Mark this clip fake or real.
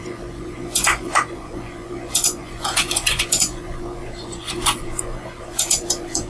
fake